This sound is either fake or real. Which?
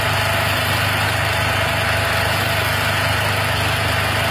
real